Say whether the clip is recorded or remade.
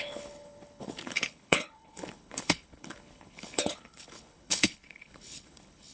remade